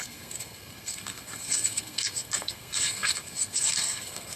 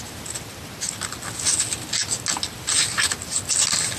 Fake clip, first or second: first